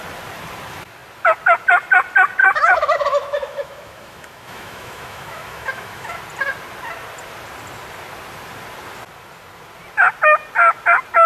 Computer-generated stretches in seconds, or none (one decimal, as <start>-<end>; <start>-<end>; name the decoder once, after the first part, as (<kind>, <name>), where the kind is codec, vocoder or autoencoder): 2.4-6.2 (autoencoder, DAC-VAE)